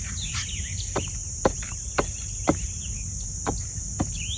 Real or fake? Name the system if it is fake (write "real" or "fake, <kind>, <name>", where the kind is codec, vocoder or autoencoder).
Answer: real